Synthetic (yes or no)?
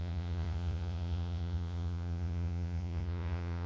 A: yes